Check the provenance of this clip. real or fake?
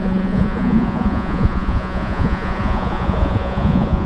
fake